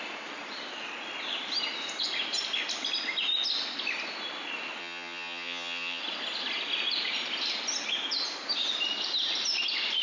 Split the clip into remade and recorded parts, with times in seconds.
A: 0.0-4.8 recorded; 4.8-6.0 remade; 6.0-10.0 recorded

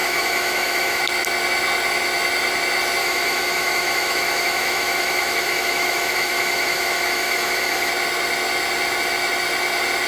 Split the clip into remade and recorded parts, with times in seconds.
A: 0.0-1.0 remade; 1.0-3.0 recorded; 3.0-7.9 remade; 7.9-10.1 recorded

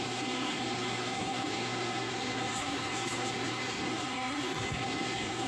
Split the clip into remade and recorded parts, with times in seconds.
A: 0.0-5.5 remade

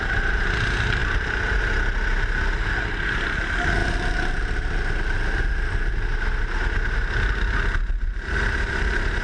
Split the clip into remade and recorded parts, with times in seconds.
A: 0.0-9.2 recorded

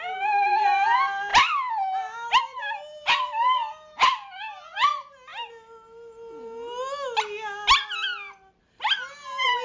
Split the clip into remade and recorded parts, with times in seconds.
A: 0.0-9.6 recorded

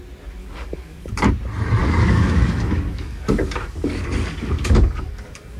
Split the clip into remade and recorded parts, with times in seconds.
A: 0.0-0.4 recorded; 0.4-1.3 remade; 1.3-1.8 recorded; 1.8-5.6 remade